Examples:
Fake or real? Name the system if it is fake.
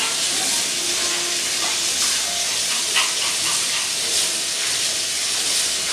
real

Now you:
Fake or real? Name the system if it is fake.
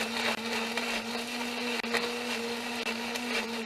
real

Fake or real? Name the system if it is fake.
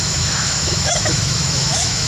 fake, autoencoder, DAC-VAE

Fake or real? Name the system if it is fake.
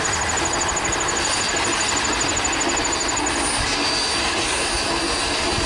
real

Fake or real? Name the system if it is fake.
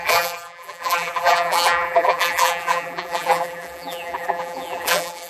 fake, vocoder, BigVGAN v2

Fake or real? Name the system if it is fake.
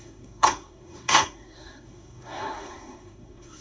fake, codec, SNAC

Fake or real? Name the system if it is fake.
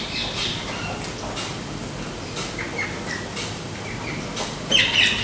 real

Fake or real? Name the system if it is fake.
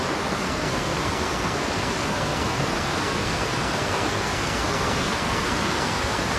fake, codec, SNAC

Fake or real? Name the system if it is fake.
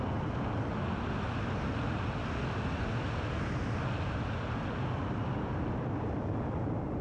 real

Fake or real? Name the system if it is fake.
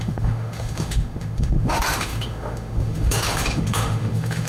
fake, autoencoder, DAC-VAE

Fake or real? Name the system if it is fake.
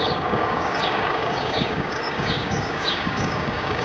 fake, codec, DAC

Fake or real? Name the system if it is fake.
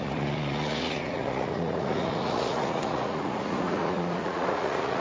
fake, vocoder, Vocos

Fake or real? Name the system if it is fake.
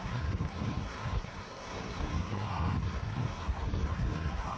fake, codec, SNAC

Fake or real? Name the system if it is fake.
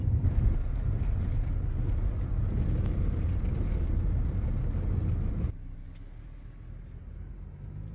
real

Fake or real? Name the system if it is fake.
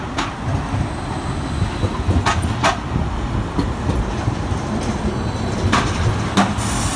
real